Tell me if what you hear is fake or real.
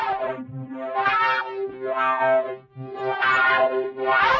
fake